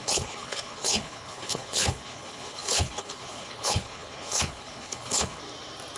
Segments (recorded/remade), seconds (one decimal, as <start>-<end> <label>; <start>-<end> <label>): 0.0-5.4 remade; 5.4-6.0 recorded